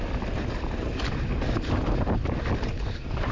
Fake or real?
real